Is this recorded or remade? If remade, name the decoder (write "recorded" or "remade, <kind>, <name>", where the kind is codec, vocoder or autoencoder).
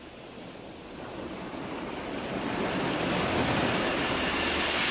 recorded